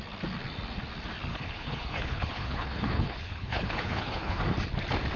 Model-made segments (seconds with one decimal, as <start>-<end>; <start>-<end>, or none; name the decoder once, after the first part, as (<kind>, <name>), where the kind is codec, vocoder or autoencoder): 1.3-4.4 (codec, HILCodec)